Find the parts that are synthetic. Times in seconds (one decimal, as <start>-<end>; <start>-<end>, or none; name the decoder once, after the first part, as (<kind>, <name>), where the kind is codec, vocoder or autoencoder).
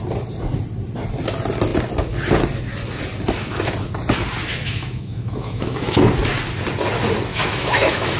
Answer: 4.5-6.0 (autoencoder, DAC-VAE); 7.3-8.2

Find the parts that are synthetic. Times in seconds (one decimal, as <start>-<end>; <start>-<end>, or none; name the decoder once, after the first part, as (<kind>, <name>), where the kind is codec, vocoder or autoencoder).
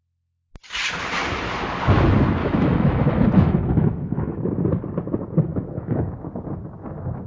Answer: 2.4-4.4 (autoencoder, DAC-VAE); 5.5-6.1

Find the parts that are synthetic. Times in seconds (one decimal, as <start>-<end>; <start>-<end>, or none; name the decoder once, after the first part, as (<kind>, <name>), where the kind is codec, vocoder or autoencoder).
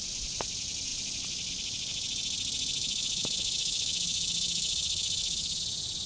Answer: 2.8-5.6 (autoencoder, DAC-VAE)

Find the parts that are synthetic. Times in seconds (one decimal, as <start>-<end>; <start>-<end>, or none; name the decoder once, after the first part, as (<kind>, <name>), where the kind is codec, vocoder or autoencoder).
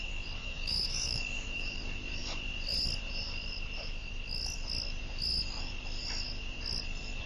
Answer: 0.4-1.8 (autoencoder, DAC-VAE)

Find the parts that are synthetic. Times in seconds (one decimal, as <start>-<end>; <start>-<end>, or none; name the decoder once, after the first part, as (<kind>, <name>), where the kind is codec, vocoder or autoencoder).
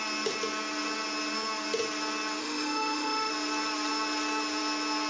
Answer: 2.4-3.3 (autoencoder, DAC-VAE)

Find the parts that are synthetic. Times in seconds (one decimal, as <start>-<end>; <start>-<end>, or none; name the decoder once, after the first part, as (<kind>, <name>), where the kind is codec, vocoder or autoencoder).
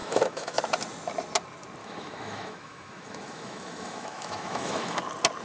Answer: 0.0-0.6 (autoencoder, DAC-VAE); 1.8-5.0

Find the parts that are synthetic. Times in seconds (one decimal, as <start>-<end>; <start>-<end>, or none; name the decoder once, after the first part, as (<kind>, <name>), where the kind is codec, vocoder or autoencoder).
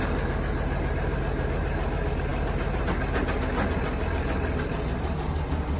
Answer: none